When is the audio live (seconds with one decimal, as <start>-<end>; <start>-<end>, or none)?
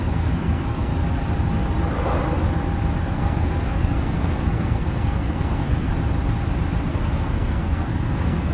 0.9-3.0; 5.9-6.9